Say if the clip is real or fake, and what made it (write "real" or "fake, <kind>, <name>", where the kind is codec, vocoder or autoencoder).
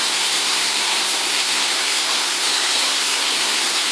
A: fake, codec, SNAC